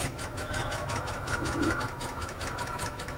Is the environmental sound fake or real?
fake